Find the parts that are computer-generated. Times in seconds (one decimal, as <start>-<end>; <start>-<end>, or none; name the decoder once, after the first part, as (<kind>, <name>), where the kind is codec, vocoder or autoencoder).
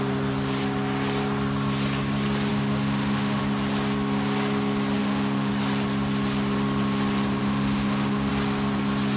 2.5-3.4 (autoencoder, DAC-VAE); 5.0-5.5; 7.4-8.3